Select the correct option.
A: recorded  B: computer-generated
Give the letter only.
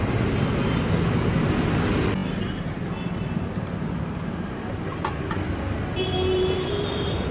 A